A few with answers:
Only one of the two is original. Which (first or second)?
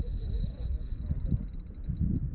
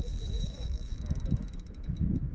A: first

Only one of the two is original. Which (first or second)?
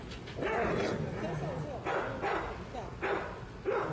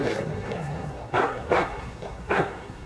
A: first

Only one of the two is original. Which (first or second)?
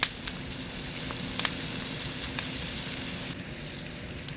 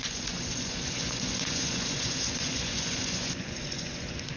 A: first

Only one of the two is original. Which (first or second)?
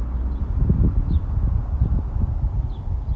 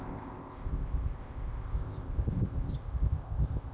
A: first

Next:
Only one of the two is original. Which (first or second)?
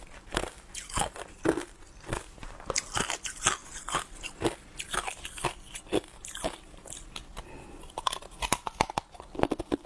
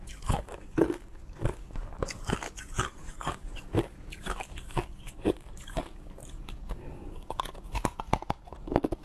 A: first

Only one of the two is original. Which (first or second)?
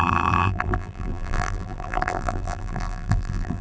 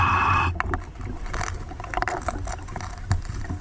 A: second